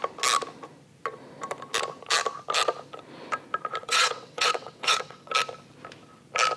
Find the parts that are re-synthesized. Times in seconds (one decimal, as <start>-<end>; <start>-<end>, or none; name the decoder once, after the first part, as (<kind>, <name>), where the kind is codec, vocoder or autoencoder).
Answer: 3.8-5.3 (vocoder, WaveNeXt)